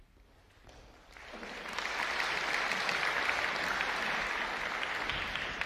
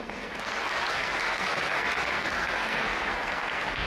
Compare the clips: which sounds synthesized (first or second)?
second